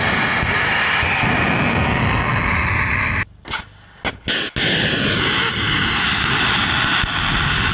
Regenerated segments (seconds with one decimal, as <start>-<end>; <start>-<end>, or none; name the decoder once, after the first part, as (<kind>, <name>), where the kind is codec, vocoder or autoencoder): none